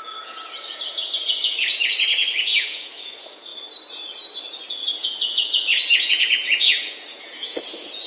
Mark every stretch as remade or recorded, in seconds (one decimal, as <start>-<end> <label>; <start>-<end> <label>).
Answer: 0.0-3.5 remade; 3.5-4.4 recorded; 4.4-8.1 remade